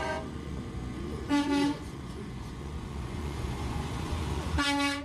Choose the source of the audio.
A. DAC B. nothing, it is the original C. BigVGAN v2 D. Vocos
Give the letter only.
D